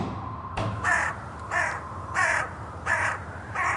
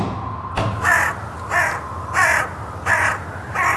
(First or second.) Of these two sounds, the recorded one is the second